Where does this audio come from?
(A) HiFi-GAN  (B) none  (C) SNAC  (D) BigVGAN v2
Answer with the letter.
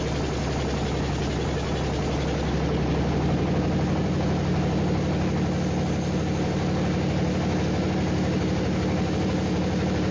B